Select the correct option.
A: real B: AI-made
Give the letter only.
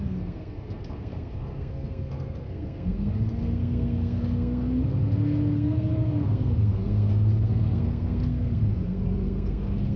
B